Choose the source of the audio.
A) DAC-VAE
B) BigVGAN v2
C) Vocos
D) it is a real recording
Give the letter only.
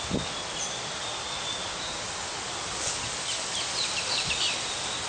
D